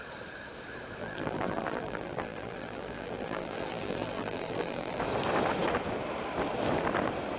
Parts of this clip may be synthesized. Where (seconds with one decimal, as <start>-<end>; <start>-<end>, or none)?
1.0-5.0